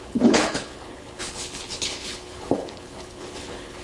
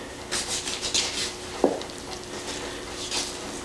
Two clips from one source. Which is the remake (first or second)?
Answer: first